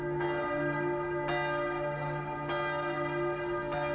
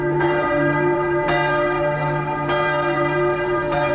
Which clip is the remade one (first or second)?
second